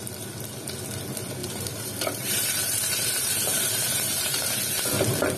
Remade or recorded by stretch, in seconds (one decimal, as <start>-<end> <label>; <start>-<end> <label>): 0.0-1.4 recorded; 1.4-4.6 remade; 4.6-5.4 recorded